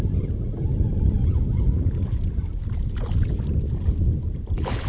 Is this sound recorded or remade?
recorded